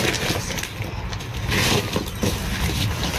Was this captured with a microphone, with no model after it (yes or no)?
yes